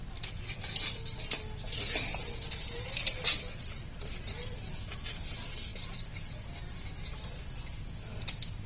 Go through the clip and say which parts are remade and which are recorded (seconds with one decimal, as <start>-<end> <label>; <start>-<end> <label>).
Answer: 0.0-8.7 recorded